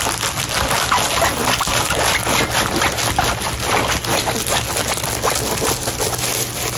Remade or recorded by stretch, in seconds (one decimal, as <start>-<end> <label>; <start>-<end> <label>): 0.0-6.8 recorded